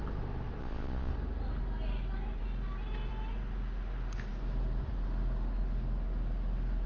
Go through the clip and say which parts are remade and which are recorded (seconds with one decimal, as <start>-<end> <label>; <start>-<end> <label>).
0.0-0.6 recorded; 0.6-1.1 remade; 1.1-6.9 recorded